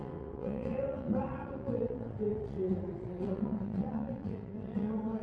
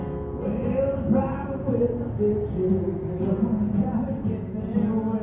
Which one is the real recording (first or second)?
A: second